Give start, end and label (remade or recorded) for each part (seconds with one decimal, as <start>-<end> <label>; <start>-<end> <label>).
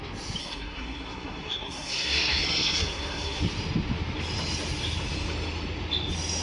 0.0-0.4 recorded; 0.4-3.4 remade; 3.4-6.4 recorded